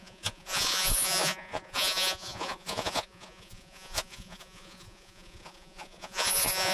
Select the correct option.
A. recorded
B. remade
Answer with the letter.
B